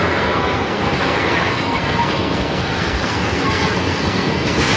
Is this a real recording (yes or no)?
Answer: no